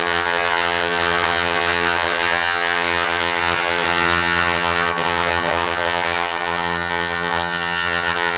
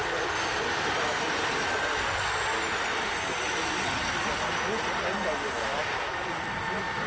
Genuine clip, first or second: second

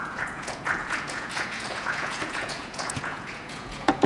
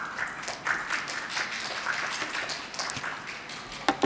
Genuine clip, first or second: second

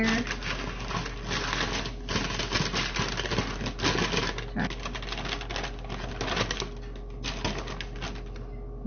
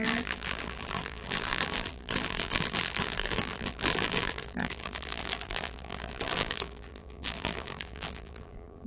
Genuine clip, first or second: first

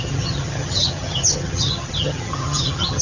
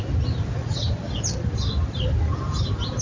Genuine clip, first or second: second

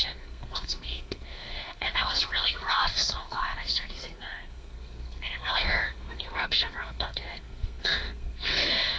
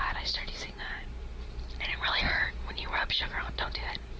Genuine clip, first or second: second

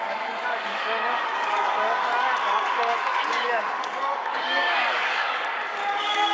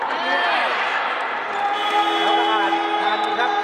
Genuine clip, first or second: second